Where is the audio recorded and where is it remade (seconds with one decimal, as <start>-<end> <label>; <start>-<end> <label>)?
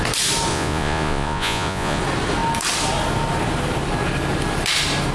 0.0-0.5 recorded; 0.5-2.0 remade; 2.0-5.1 recorded